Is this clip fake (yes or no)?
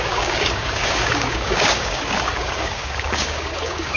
yes